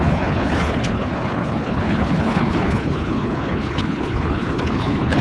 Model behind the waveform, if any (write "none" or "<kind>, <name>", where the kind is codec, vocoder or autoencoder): codec, HILCodec